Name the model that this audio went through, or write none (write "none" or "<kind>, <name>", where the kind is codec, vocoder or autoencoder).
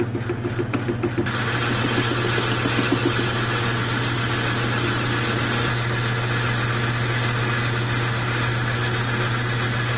none